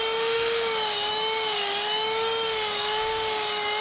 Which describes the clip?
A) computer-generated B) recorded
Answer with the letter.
A